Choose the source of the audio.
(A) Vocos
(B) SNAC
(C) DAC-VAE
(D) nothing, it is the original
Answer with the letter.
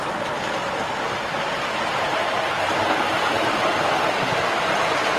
D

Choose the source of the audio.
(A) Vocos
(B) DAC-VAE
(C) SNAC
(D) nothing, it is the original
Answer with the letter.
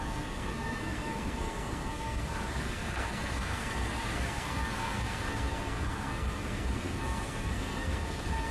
C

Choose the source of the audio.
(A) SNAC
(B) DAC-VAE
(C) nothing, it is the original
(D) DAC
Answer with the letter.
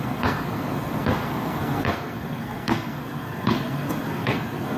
A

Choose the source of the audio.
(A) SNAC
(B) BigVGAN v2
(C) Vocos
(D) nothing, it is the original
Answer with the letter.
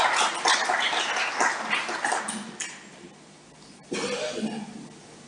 D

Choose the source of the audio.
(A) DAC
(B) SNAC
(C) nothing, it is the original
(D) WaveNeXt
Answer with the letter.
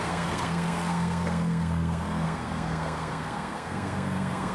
B